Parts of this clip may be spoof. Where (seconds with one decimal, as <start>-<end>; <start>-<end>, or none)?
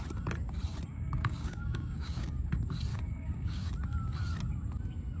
0.9-2.5; 2.9-3.7